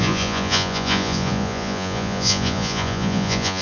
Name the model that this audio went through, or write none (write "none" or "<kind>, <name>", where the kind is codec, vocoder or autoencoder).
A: vocoder, Vocos